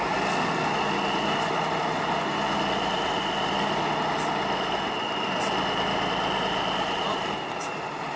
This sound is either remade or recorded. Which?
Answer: recorded